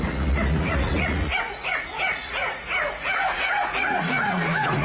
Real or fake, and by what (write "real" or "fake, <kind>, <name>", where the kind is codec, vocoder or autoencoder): fake, vocoder, Vocos